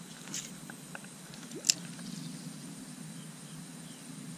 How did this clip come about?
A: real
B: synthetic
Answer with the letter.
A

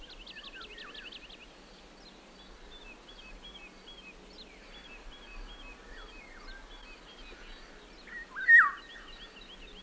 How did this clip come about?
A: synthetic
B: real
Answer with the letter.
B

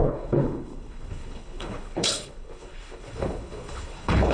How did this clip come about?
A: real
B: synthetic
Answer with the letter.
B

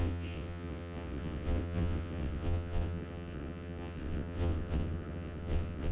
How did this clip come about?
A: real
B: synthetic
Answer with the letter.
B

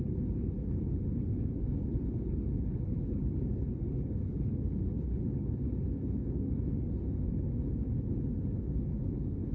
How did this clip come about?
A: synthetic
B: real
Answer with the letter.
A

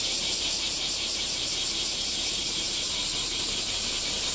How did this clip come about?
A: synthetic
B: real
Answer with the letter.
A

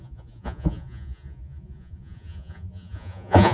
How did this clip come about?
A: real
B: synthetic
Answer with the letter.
B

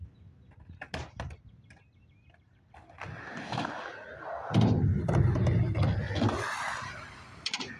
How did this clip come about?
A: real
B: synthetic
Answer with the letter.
A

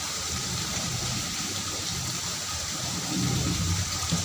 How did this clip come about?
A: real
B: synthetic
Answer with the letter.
B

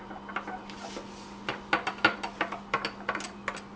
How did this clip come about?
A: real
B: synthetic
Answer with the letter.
A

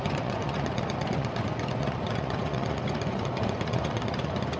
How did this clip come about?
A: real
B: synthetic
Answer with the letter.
B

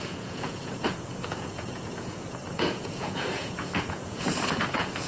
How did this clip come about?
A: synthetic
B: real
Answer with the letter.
A